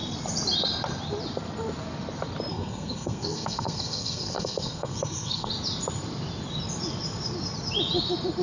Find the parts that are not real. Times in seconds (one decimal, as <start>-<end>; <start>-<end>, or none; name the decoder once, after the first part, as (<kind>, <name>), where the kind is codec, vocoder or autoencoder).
2.5-5.5 (codec, SNAC)